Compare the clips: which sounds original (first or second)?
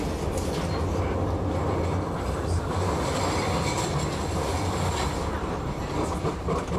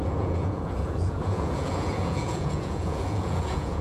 first